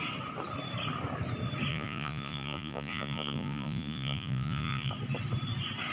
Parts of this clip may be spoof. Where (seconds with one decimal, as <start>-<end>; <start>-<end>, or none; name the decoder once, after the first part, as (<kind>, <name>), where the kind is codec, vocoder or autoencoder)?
1.7-4.9 (vocoder, Vocos)